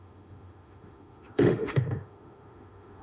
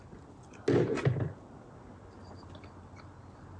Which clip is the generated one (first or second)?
first